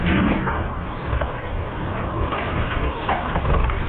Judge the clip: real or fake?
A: fake